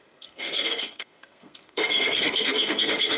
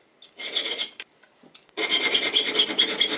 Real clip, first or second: second